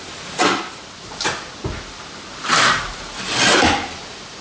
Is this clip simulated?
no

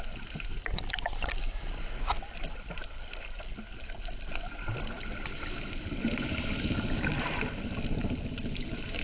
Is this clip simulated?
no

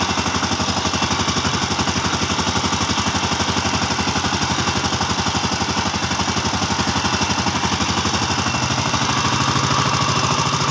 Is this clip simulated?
no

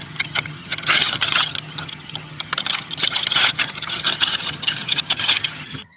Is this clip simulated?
yes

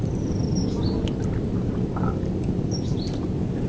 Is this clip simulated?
no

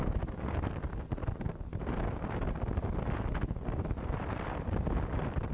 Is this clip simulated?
no